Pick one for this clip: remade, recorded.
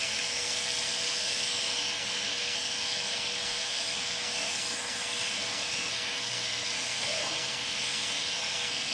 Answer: remade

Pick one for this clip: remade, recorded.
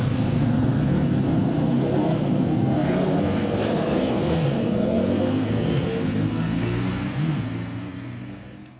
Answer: remade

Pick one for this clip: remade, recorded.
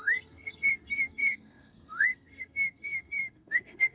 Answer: remade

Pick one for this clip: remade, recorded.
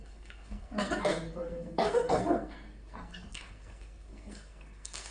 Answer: remade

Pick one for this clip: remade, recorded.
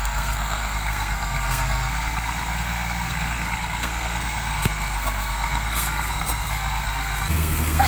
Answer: remade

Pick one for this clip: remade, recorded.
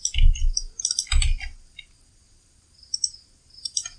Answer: recorded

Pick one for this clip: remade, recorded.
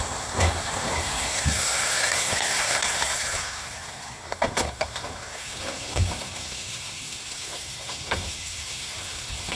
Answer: remade